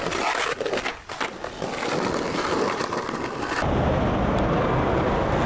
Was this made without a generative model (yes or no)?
yes